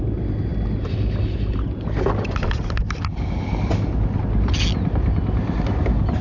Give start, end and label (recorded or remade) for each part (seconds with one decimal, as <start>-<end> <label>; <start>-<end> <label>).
0.0-6.2 recorded